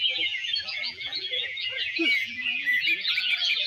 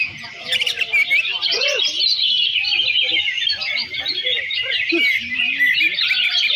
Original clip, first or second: second